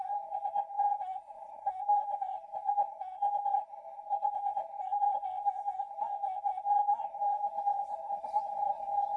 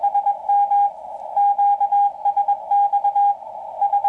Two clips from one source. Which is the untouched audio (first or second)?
second